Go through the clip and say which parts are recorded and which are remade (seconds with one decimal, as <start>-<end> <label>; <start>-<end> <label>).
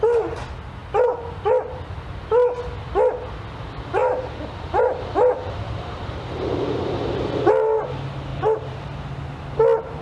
0.0-4.0 recorded; 4.0-7.9 remade; 7.9-8.3 recorded; 8.3-9.1 remade; 9.1-10.0 recorded